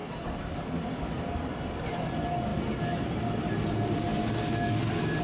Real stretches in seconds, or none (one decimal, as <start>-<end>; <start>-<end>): 0.0-5.2